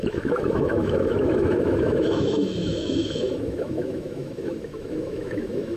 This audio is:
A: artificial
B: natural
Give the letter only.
A